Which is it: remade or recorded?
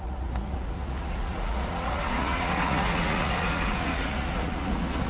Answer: remade